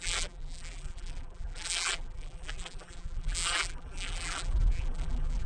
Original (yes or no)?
no